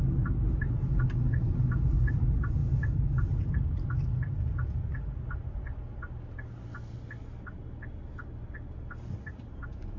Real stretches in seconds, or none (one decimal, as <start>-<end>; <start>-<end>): 0.0-10.0